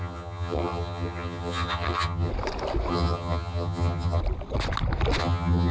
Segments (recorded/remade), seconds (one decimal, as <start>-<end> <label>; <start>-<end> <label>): 0.0-2.3 remade; 2.3-2.9 recorded; 2.9-4.2 remade; 4.2-5.2 recorded; 5.2-5.7 remade